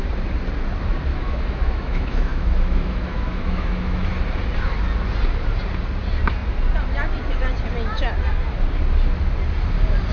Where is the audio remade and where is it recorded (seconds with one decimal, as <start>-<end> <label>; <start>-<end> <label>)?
0.0-1.1 recorded; 1.1-4.1 remade; 4.1-10.1 recorded